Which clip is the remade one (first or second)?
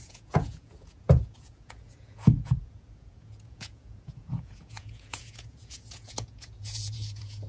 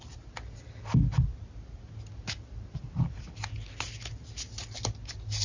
first